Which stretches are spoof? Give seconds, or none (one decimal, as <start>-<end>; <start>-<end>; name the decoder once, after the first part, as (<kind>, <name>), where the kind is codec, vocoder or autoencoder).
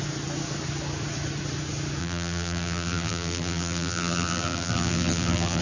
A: 2.0-5.6 (vocoder, BigVGAN v2)